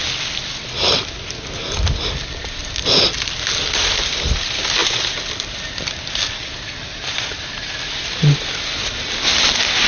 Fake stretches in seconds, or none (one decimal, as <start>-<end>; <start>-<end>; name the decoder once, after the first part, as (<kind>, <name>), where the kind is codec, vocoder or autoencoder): none